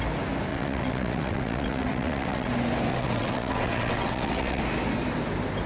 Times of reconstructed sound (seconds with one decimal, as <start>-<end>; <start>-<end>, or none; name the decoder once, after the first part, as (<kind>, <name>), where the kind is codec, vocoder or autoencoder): 0.5-2.5 (vocoder, WaveNeXt); 2.9-4.6